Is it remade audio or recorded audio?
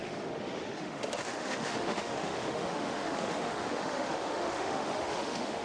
remade